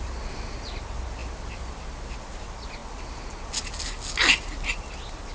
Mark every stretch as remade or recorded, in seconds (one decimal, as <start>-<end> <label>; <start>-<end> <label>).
0.0-5.3 recorded